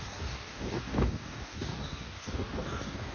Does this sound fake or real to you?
fake